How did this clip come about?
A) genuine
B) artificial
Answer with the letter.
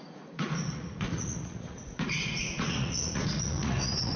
B